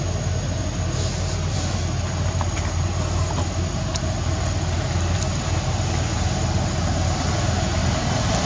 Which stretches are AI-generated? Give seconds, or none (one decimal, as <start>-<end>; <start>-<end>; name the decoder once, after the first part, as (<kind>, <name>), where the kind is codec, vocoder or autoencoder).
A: none